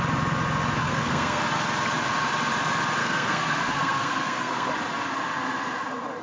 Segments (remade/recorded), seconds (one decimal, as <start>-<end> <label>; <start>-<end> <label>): 0.0-0.8 recorded; 0.8-1.4 remade; 1.4-3.0 recorded; 3.0-4.7 remade; 4.7-6.2 recorded